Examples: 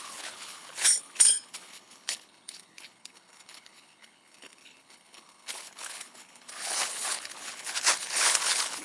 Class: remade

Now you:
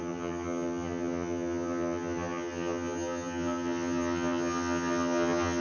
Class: remade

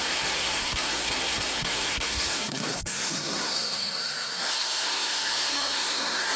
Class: remade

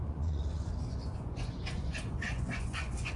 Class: remade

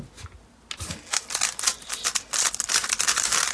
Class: recorded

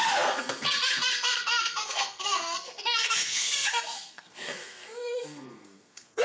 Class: remade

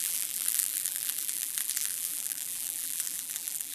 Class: remade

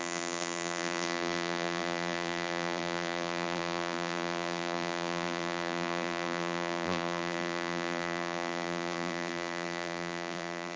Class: remade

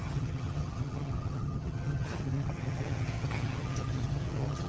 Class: remade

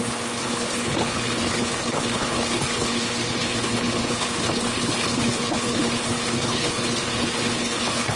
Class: remade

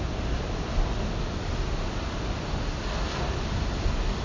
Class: recorded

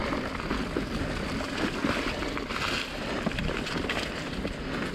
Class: recorded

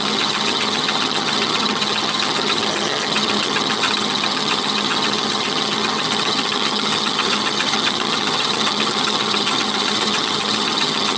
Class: remade